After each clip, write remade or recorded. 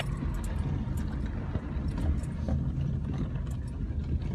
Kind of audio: recorded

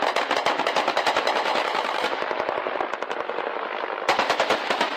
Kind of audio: recorded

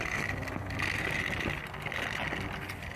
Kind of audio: recorded